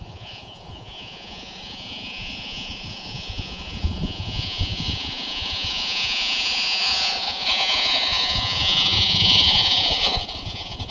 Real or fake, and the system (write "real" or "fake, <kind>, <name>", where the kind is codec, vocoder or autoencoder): fake, vocoder, Vocos